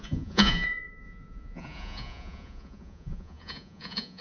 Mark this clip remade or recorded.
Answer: remade